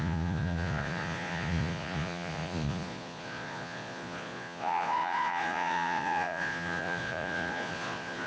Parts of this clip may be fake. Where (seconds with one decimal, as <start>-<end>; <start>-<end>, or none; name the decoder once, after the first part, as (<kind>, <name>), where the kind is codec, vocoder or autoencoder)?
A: 0.0-8.3 (vocoder, Vocos)